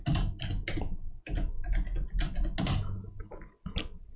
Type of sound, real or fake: real